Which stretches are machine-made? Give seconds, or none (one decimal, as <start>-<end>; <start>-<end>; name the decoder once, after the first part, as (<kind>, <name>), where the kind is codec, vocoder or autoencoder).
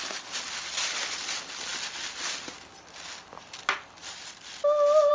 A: none